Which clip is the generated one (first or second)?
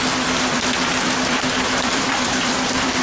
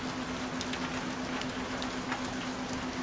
first